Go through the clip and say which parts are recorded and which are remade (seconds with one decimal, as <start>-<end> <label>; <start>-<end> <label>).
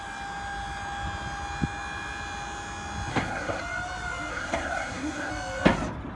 0.0-3.1 recorded; 3.1-3.6 remade; 3.6-4.3 recorded; 4.3-5.3 remade; 5.3-6.2 recorded